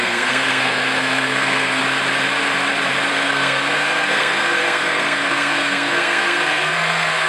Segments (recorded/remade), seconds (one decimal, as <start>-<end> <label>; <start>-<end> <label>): 0.0-1.8 remade; 1.8-3.1 recorded; 3.1-7.3 remade